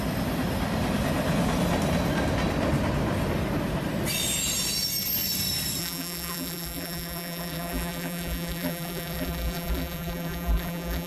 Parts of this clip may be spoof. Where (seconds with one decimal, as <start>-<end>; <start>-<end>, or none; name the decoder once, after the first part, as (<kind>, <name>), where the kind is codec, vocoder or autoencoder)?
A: 5.8-11.1 (vocoder, BigVGAN v2)